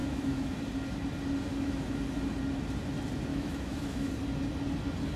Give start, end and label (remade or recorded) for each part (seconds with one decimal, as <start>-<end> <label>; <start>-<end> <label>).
0.0-0.6 remade; 0.6-1.5 recorded; 1.5-2.0 remade; 2.0-3.3 recorded; 3.3-4.1 remade; 4.1-5.2 recorded